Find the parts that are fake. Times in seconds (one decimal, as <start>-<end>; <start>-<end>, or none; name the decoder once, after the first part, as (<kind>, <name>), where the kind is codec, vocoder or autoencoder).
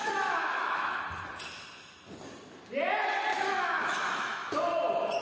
0.0-1.0 (autoencoder, DAC-VAE); 3.3-4.6